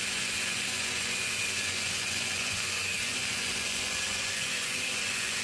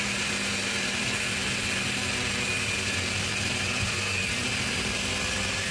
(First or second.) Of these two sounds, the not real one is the first